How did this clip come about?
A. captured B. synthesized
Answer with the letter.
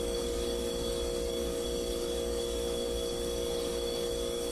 B